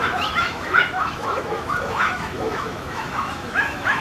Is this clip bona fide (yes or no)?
no